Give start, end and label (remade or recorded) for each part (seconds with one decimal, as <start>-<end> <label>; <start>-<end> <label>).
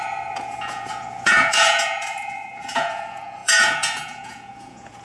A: 0.0-5.0 remade